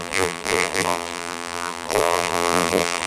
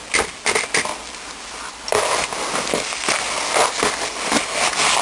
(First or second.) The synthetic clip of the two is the first